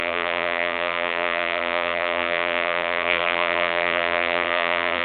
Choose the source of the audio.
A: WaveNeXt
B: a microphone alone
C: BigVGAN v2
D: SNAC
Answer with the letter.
C